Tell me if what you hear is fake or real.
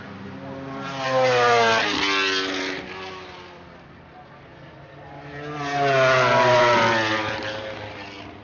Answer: real